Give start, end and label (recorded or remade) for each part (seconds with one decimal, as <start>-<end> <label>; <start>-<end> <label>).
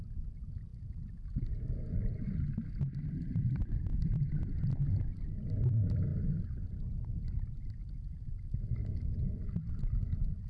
0.0-10.5 recorded